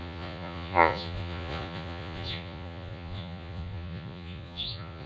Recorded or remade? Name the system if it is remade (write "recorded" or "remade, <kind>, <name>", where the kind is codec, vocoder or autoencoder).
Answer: remade, vocoder, Vocos